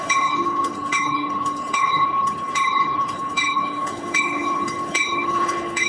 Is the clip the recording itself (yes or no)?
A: no